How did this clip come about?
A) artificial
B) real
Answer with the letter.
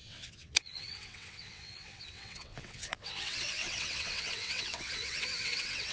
A